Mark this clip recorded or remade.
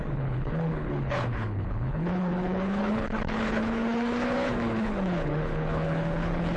remade